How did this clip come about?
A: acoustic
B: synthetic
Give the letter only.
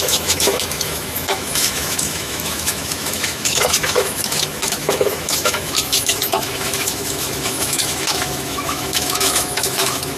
B